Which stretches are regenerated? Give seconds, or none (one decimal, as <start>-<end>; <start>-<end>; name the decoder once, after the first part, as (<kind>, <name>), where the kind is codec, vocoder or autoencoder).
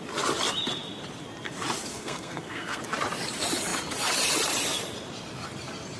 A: 1.9-2.8 (codec, SNAC)